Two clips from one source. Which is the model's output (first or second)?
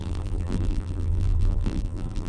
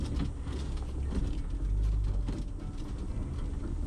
first